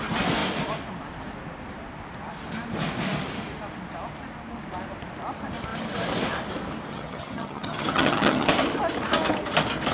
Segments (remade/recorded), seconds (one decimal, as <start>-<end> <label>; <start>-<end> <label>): 0.0-6.9 recorded; 6.9-8.5 remade; 8.5-9.9 recorded